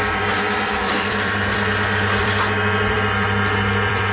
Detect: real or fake fake